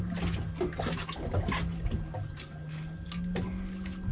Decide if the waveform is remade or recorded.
recorded